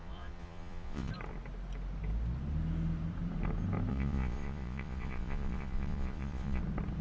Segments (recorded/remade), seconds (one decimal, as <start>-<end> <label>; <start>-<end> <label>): 0.0-1.1 remade; 1.1-3.9 recorded; 3.9-6.6 remade; 6.6-7.0 recorded